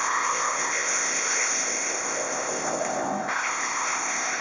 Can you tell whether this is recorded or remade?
remade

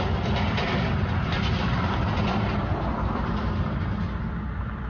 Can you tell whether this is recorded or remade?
recorded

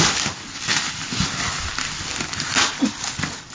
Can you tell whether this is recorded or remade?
recorded